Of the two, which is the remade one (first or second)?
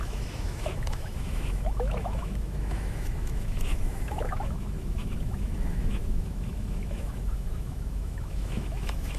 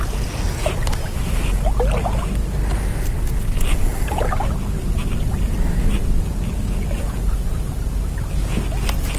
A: first